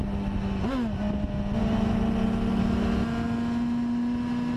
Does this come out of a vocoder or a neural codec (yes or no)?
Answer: no